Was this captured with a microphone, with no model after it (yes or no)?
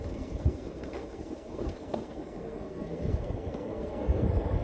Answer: no